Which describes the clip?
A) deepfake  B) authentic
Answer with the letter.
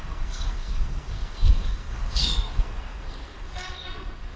A